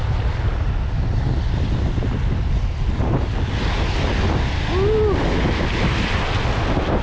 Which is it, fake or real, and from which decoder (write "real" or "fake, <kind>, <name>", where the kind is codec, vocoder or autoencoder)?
real